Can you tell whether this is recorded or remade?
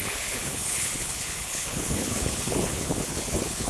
remade